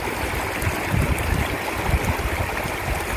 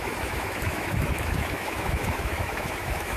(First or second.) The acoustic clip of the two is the first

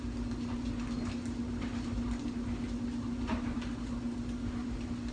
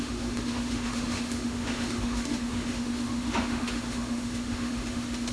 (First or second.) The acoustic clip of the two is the first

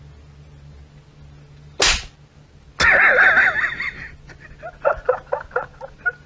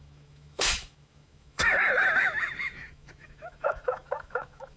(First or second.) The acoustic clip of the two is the first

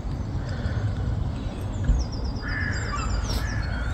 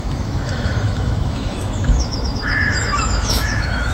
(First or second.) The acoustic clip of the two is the first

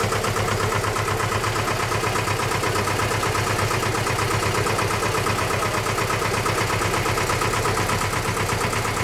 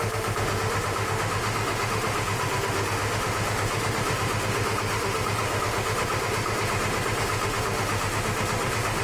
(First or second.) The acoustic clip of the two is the first